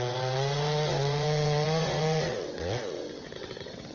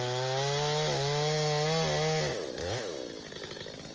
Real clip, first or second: second